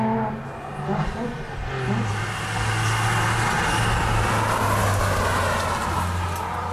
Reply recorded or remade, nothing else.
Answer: recorded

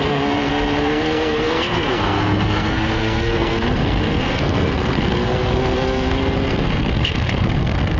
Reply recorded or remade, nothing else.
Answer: remade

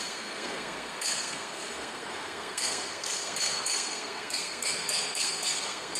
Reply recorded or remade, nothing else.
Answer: remade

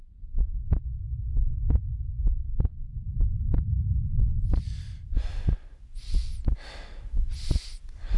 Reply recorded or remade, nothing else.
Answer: recorded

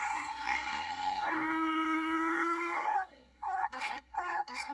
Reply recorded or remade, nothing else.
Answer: remade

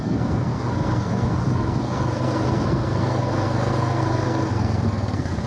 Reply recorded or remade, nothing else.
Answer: remade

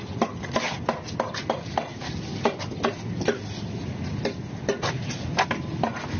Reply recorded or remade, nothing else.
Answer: recorded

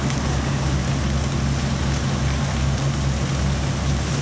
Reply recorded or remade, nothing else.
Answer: recorded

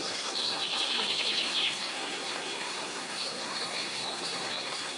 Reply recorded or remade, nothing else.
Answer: remade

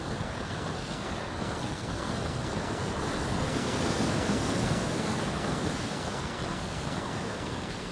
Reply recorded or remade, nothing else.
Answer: remade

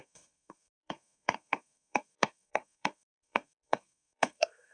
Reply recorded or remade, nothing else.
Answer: remade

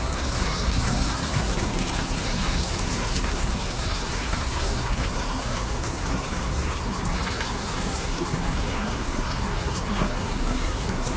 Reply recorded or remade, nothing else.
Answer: remade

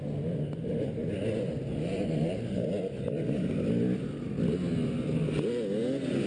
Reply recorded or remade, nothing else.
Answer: recorded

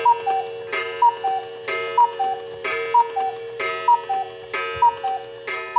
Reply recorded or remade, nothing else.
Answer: recorded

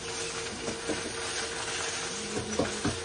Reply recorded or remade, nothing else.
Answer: recorded